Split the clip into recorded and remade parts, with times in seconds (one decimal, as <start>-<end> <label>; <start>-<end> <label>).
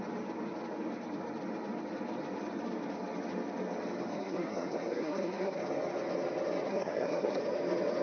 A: 0.0-4.1 recorded; 4.1-5.6 remade; 5.6-6.7 recorded; 6.7-7.4 remade; 7.4-8.0 recorded